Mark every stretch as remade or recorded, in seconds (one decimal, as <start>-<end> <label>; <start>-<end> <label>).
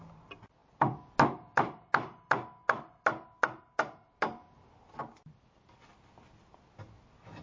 0.0-7.4 recorded